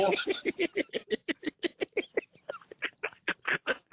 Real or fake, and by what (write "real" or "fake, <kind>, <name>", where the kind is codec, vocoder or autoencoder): real